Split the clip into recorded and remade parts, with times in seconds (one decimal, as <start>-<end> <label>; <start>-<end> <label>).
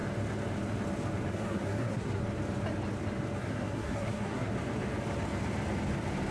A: 0.0-1.3 recorded; 1.3-2.2 remade; 2.2-3.4 recorded; 3.4-4.5 remade; 4.5-6.3 recorded